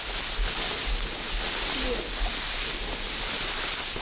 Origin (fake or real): real